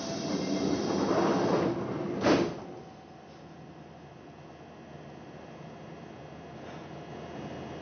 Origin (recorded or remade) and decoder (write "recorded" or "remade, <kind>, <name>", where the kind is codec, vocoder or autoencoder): recorded